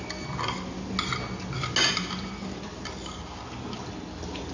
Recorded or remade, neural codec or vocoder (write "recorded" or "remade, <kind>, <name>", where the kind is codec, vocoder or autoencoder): recorded